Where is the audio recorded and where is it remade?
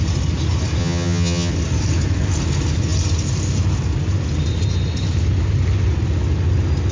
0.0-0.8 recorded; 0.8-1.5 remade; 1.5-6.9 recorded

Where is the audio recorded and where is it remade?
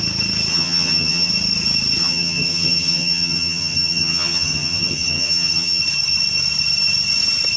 0.0-0.5 recorded; 0.5-1.3 remade; 1.3-2.0 recorded; 2.0-5.8 remade; 5.8-7.6 recorded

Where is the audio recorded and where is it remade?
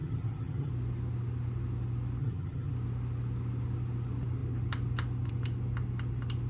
0.0-0.7 remade; 0.7-2.2 recorded; 2.2-2.7 remade; 2.7-6.5 recorded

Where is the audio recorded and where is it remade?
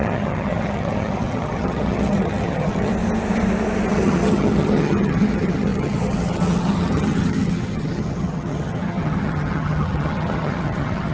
0.0-2.9 remade; 2.9-3.9 recorded; 3.9-11.1 remade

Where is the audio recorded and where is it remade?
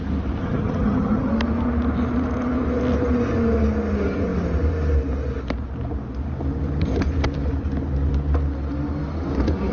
0.0-0.4 recorded; 0.4-1.3 remade; 1.3-9.7 recorded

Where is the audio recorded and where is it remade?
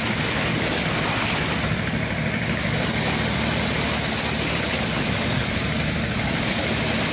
0.0-7.1 recorded